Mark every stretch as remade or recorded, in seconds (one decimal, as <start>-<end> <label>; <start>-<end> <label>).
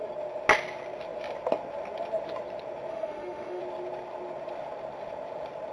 0.0-2.9 recorded; 2.9-3.6 remade; 3.6-5.7 recorded